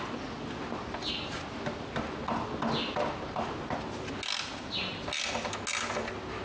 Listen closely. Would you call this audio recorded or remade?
recorded